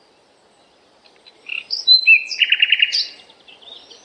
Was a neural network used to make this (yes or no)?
no